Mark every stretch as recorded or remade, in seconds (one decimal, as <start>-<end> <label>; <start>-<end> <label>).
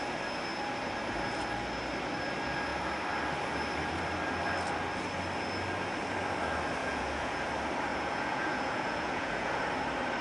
0.0-6.8 recorded; 6.8-7.4 remade; 7.4-7.9 recorded; 7.9-9.6 remade; 9.6-10.2 recorded